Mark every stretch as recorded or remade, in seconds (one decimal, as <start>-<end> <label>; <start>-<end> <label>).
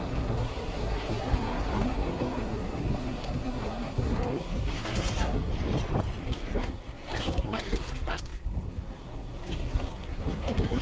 0.0-5.5 remade; 5.5-6.2 recorded; 6.2-10.8 remade